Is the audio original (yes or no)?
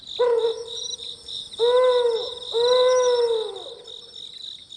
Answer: yes